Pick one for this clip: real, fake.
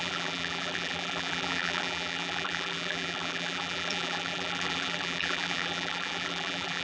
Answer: fake